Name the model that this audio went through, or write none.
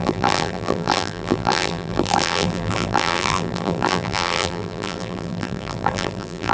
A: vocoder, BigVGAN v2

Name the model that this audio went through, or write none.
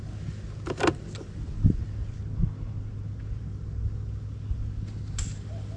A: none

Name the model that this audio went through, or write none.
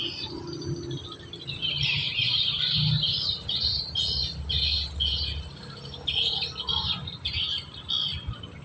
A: none